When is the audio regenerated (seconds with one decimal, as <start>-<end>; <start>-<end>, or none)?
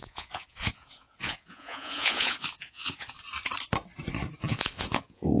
0.0-3.2; 4.5-5.4